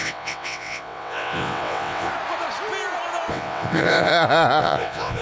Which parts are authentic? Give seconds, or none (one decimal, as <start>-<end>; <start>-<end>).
2.1-3.3; 4.1-4.6